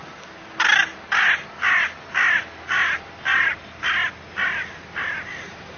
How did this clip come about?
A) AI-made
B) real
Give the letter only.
B